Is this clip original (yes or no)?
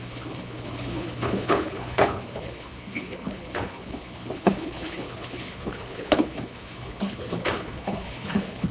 no